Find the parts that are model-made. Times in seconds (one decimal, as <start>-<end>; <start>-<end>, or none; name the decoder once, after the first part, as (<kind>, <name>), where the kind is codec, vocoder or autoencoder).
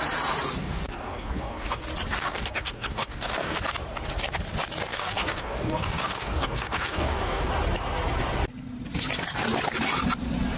0.6-1.8 (codec, DAC); 2.2-3.6; 4.9-7.5